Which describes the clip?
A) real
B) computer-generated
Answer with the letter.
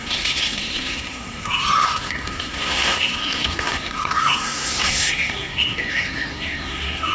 B